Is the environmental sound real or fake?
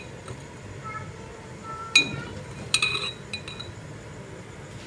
real